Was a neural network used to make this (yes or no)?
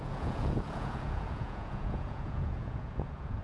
yes